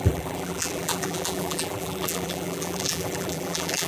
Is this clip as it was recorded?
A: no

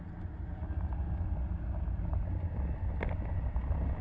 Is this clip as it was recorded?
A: yes